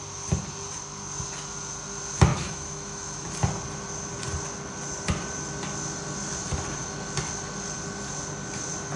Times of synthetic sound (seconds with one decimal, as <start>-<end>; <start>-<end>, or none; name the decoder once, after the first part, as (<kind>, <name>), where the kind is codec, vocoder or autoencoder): 2.3-3.3 (autoencoder, DAC-VAE)